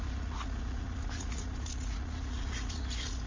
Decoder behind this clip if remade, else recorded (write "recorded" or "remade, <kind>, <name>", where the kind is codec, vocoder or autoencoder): remade, vocoder, Vocos